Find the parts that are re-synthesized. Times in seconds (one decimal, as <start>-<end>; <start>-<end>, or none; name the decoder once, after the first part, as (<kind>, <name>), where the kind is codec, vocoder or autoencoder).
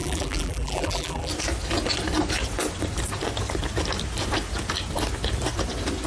0.0-1.3 (vocoder, BigVGAN v2)